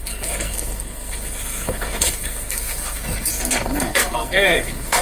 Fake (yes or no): yes